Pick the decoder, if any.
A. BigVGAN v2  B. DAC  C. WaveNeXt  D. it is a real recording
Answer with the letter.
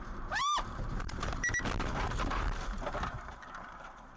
A